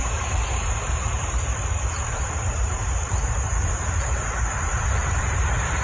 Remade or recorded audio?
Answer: remade